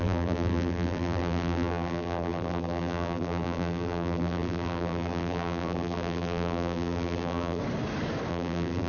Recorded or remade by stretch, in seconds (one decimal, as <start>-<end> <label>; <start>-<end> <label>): 0.0-7.6 remade; 7.6-8.3 recorded; 8.3-8.9 remade